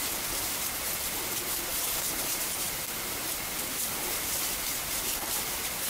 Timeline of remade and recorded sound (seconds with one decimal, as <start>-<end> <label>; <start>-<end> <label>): 0.0-1.7 recorded; 1.7-4.6 remade; 4.6-5.9 recorded